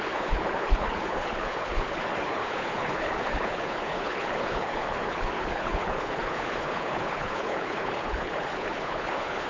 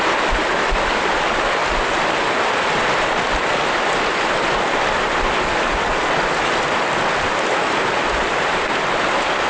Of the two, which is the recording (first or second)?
second